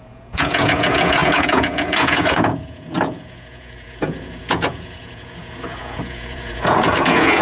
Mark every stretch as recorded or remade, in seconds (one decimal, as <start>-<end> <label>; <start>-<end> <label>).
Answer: 0.0-7.4 remade